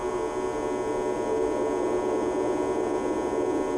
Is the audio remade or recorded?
recorded